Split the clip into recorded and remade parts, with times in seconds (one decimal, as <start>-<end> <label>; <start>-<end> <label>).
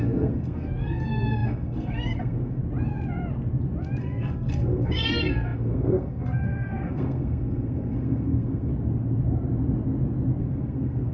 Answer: 0.0-2.6 remade; 2.6-4.0 recorded; 4.0-8.7 remade; 8.7-10.4 recorded; 10.4-11.1 remade